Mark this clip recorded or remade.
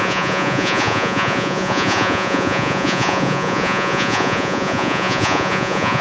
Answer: remade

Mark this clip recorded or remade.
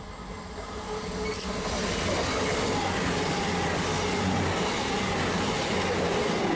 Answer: recorded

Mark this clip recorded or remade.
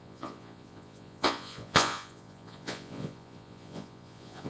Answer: remade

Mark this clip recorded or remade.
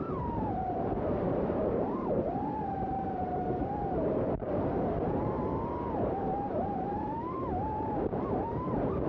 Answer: remade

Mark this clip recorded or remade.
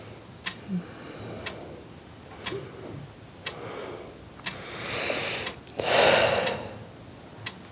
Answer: recorded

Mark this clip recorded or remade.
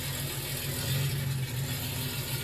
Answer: recorded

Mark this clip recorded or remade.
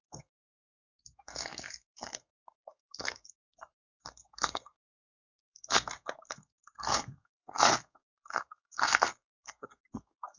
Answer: remade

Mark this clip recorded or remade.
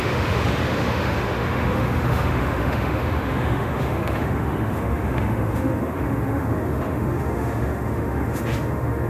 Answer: remade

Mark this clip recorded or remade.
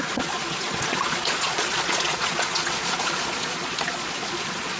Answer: remade